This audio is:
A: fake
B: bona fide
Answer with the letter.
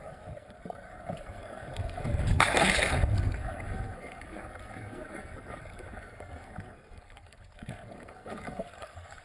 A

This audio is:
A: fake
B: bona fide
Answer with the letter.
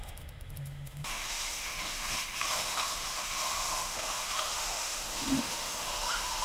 A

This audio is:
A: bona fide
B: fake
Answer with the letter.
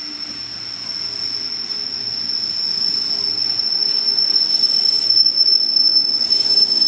A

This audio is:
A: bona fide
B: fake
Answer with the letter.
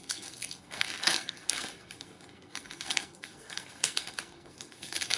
B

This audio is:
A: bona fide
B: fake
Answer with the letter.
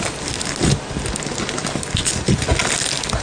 A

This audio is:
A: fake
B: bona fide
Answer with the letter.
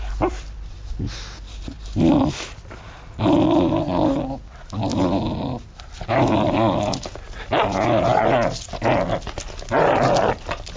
B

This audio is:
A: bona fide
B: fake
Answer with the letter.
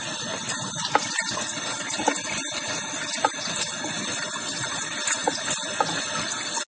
A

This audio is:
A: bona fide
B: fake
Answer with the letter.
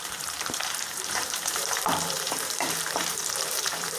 B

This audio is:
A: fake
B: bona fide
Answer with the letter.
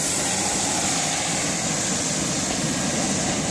B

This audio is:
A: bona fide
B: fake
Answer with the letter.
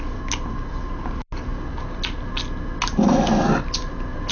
A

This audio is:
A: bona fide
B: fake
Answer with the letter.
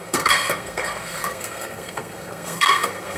B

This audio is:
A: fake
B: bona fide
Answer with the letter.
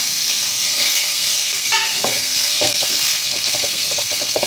A